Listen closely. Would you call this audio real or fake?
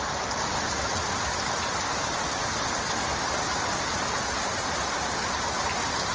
real